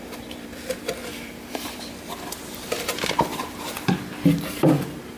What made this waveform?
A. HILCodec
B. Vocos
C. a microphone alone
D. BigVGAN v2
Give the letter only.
D